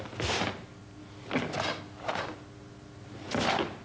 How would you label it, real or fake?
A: real